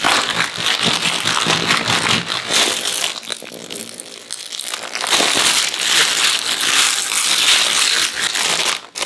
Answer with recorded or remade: recorded